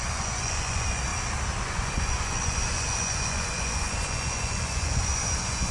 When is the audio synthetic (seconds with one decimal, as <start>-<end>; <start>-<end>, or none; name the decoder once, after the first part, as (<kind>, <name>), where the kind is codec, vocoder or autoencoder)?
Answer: 0.0-1.1 (vocoder, Vocos); 1.6-5.7